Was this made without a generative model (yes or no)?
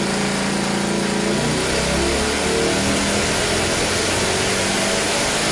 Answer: yes